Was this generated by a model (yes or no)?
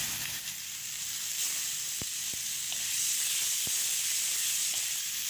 yes